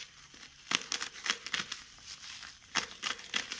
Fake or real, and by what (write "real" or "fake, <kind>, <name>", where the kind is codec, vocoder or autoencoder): real